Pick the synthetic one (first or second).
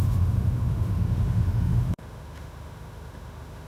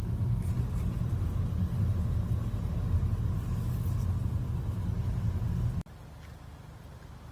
first